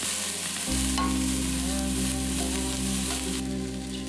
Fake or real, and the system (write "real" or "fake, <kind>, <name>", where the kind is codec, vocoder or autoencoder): real